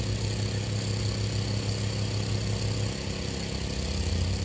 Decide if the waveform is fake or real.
real